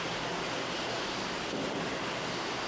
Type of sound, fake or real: real